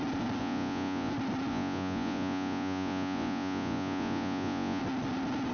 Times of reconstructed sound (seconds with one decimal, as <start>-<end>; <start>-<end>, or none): 0.4-1.1; 1.5-4.8

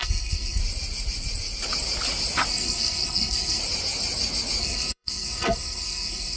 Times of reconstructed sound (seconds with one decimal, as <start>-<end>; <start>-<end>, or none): 0.0-0.6; 2.5-3.6; 4.6-6.4

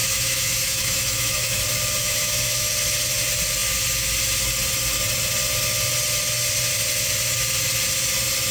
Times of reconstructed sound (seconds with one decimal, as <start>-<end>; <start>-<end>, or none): 0.0-1.6; 2.0-2.7

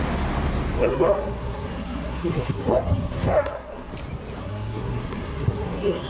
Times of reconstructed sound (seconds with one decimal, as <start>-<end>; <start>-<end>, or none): 0.8-3.9; 4.4-6.1

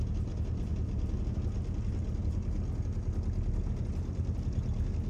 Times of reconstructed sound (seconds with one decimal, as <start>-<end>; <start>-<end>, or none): none

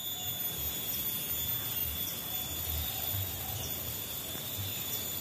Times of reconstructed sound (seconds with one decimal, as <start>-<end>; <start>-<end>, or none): 1.8-5.2